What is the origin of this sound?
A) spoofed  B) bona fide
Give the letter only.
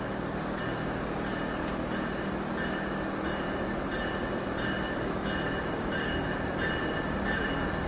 B